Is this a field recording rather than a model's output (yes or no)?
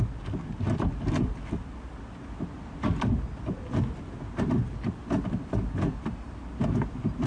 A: yes